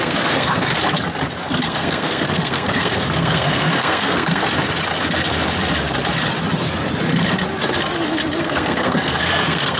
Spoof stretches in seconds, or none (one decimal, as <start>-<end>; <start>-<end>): 0.0-0.7; 1.4-4.4; 8.4-9.8